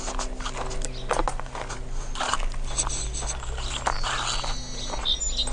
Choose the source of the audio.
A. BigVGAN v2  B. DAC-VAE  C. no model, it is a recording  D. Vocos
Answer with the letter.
C